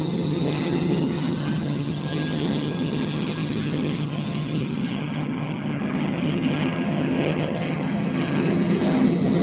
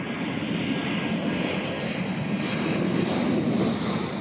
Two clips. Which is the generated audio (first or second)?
first